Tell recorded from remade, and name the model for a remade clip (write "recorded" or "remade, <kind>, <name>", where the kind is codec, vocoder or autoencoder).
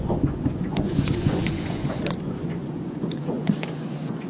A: remade, vocoder, Vocos